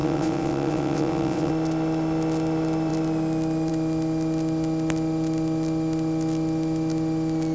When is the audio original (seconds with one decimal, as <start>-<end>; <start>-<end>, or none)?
1.5-7.5